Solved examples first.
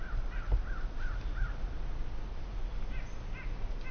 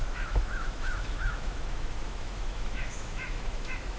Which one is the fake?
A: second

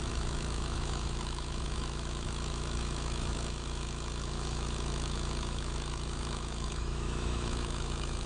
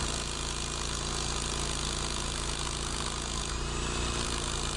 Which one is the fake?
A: first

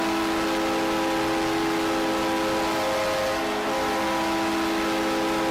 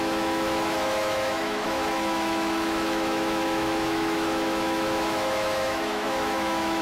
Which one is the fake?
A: second